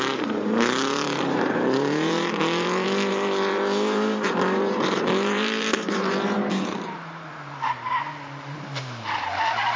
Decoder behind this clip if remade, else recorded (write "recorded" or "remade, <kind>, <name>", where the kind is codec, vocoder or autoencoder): remade, vocoder, BigVGAN v2